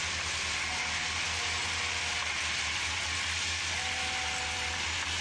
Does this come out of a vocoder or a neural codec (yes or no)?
no